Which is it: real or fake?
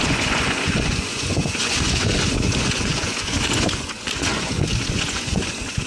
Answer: fake